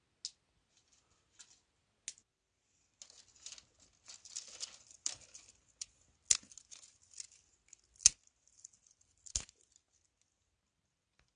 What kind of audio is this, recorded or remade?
recorded